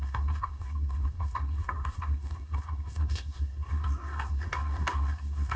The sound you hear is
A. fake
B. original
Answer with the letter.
A